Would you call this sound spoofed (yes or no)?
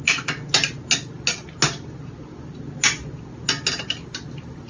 no